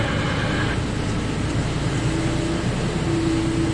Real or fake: real